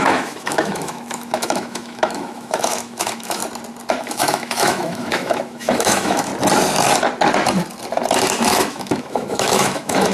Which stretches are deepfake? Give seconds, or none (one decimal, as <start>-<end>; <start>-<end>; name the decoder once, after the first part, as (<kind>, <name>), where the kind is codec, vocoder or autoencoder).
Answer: 0.0-3.4 (autoencoder, DAC-VAE); 4.0-6.3; 8.4-10.1